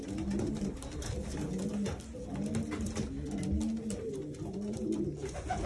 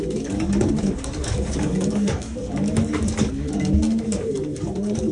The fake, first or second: second